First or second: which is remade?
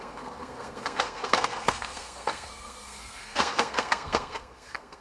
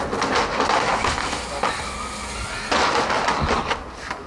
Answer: first